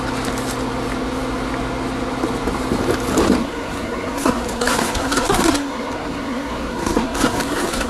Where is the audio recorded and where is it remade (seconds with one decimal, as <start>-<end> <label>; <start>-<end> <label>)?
0.0-3.4 recorded; 3.4-7.9 remade